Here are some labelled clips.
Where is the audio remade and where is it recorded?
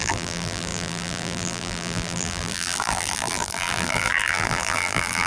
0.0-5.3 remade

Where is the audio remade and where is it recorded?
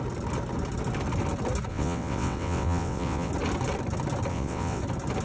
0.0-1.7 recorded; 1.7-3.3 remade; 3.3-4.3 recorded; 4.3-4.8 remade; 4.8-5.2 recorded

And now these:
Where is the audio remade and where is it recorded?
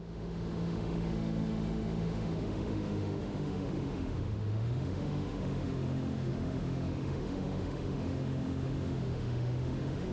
0.0-10.1 remade